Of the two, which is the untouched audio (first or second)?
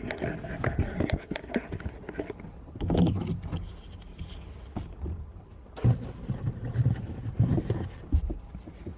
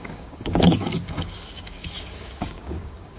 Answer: first